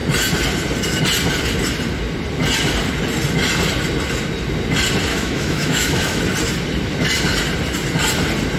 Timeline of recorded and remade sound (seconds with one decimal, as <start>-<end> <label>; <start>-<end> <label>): 0.0-5.1 recorded; 5.1-6.2 remade; 6.2-8.6 recorded